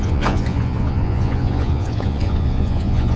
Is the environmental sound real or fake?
fake